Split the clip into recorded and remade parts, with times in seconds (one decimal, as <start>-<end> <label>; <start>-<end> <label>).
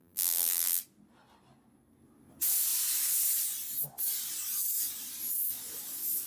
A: 0.0-0.8 remade; 0.8-6.3 recorded